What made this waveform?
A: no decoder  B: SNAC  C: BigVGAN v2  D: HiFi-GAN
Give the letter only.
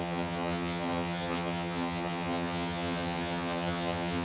D